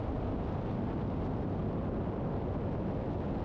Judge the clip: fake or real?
real